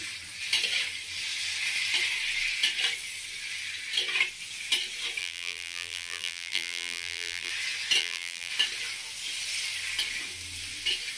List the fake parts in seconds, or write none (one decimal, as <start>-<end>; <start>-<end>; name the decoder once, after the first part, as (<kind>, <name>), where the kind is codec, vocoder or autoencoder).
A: 5.2-7.5 (vocoder, BigVGAN v2); 8.0-8.5